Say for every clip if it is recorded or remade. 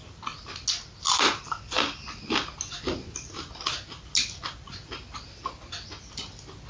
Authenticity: recorded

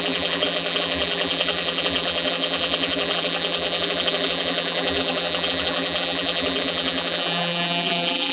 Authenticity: remade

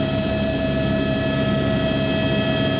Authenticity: recorded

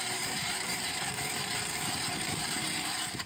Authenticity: remade